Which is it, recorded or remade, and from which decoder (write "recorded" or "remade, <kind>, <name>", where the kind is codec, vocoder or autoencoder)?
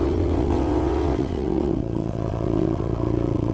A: remade, vocoder, WaveNeXt